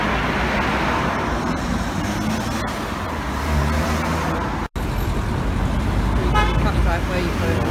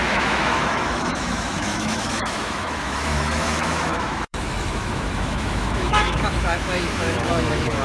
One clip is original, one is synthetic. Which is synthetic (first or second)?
second